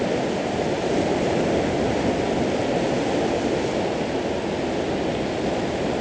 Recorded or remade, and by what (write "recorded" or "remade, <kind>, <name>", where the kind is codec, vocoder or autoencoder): recorded